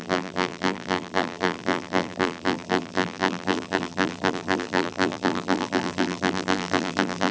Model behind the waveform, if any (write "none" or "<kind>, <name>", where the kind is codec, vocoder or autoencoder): vocoder, BigVGAN v2